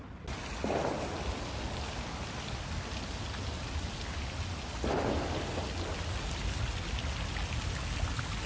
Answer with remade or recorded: recorded